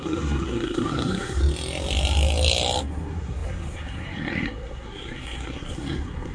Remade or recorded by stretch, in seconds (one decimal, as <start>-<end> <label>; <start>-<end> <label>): 0.0-1.4 remade; 1.4-2.8 recorded; 2.8-6.3 remade